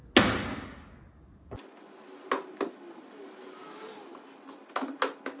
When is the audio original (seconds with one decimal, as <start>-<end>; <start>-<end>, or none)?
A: 0.0-5.4